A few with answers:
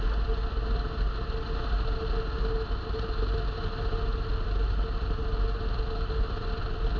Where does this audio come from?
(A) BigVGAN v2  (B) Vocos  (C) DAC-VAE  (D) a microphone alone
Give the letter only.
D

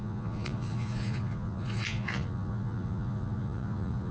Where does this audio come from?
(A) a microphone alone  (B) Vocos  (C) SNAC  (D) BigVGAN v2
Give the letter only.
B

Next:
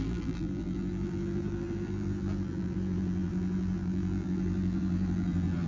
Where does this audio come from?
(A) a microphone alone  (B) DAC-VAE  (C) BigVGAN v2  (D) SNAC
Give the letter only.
C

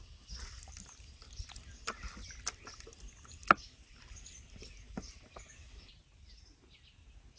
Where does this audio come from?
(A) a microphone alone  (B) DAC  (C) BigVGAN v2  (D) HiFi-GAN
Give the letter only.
A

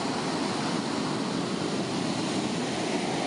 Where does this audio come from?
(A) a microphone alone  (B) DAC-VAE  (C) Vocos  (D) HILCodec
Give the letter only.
A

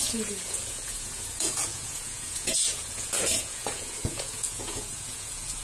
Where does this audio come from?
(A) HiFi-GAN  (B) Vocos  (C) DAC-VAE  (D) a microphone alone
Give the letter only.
B